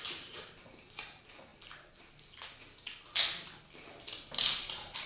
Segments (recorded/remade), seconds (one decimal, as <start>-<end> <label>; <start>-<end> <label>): 0.0-1.5 remade; 1.5-4.6 recorded; 4.6-5.1 remade